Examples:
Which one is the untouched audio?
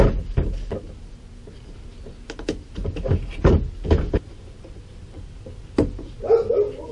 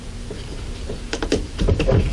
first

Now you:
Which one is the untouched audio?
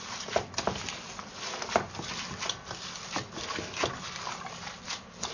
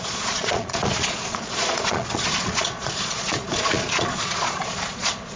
first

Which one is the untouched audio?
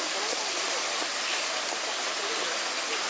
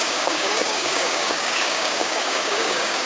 first